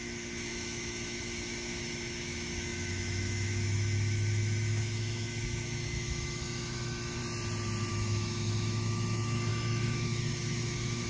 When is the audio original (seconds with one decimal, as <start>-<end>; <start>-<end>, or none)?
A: 7.2-7.9